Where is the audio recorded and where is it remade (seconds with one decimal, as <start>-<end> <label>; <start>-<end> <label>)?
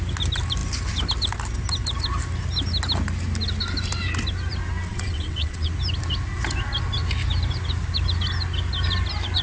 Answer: 0.0-4.9 recorded; 4.9-5.7 remade; 5.7-9.4 recorded